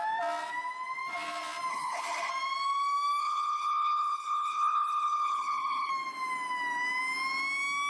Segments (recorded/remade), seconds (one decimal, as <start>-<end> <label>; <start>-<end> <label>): 0.0-1.7 recorded; 1.7-2.3 remade; 2.3-3.2 recorded; 3.2-5.9 remade; 5.9-7.9 recorded